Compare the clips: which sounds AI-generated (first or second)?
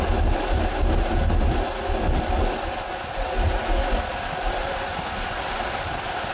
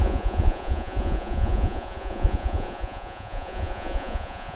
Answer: second